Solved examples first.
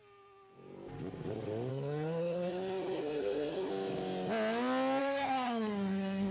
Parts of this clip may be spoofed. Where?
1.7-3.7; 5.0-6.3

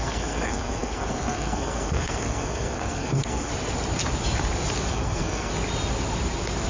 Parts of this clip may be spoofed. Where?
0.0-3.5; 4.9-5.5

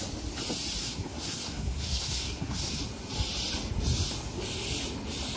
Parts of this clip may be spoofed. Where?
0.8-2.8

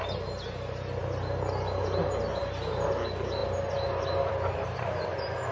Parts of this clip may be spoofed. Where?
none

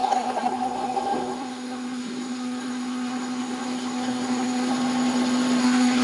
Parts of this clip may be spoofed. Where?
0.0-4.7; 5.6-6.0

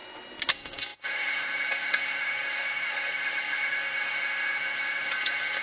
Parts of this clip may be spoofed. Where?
0.5-5.6

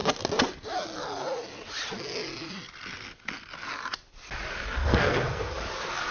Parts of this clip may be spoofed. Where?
4.8-5.5

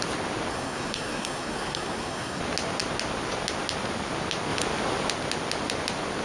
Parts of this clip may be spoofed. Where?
0.5-2.4